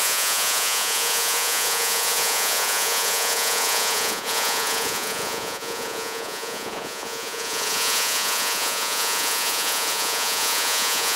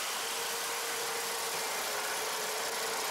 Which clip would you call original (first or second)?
second